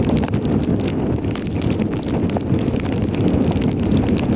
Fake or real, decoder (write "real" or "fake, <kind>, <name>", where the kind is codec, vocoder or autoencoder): fake, vocoder, BigVGAN v2